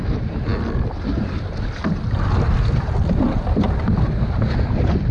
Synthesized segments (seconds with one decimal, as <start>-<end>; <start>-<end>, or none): none